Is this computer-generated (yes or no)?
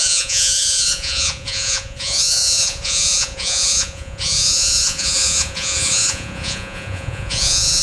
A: yes